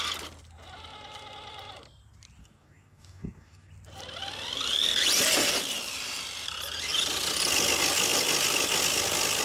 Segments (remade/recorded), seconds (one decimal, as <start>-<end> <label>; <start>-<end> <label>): 0.0-2.4 recorded; 2.4-3.7 remade; 3.7-9.4 recorded